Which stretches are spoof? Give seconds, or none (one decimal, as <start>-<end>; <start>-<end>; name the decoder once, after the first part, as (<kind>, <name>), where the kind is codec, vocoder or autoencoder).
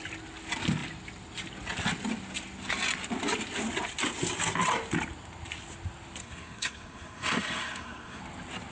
6.2-8.2 (codec, SNAC)